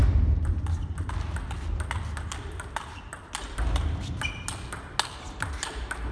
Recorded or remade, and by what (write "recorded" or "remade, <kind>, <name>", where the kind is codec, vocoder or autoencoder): recorded